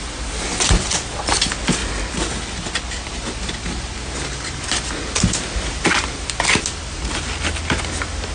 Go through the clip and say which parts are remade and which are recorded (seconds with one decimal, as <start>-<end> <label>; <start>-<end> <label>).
0.0-8.3 recorded